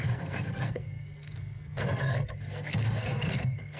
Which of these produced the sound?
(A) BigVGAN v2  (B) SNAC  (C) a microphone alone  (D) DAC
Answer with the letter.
B